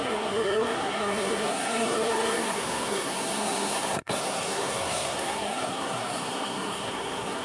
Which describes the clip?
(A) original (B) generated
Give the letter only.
B